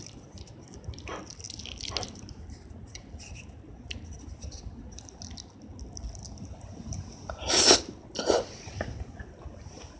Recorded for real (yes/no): yes